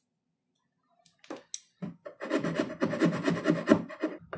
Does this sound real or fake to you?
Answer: real